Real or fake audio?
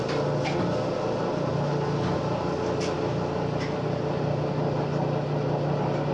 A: real